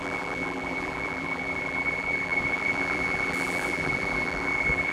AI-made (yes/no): yes